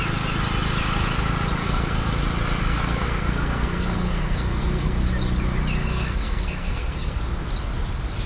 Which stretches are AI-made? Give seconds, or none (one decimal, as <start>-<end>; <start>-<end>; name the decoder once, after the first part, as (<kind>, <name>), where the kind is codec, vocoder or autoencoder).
1.6-2.1 (codec, SNAC); 2.6-5.1; 5.8-7.2